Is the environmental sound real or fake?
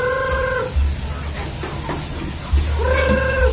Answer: real